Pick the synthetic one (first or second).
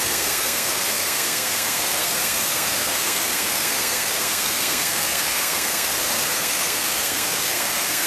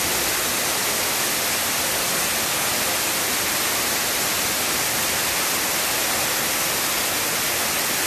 first